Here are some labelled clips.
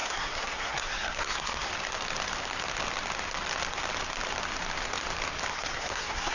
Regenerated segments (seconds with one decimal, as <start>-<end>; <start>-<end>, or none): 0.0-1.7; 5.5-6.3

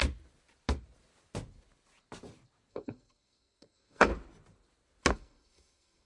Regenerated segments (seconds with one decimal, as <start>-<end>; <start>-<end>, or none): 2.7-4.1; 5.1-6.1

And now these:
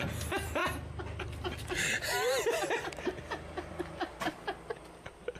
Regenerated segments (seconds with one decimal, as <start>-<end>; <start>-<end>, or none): none

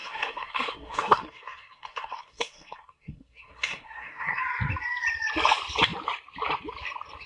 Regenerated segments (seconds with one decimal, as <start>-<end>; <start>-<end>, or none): 0.0-4.4

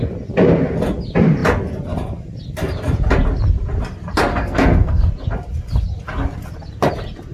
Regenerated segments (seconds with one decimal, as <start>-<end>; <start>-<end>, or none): 4.3-5.1

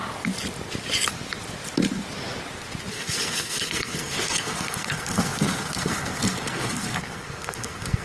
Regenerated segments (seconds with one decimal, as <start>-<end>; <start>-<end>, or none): 2.9-8.0